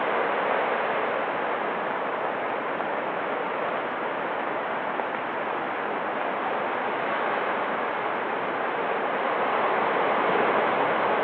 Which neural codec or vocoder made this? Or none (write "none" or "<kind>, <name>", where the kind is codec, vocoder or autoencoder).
none